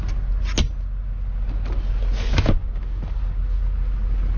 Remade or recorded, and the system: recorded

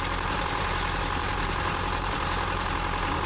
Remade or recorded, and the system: remade, vocoder, BigVGAN v2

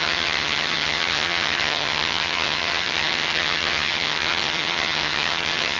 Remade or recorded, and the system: remade, vocoder, HiFi-GAN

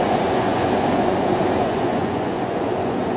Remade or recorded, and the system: remade, vocoder, Vocos